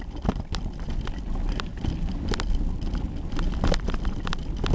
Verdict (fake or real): real